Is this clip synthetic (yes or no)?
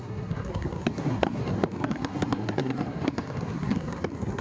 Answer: yes